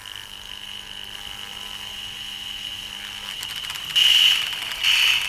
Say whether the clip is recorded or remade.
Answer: recorded